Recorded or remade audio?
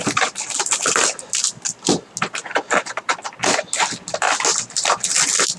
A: recorded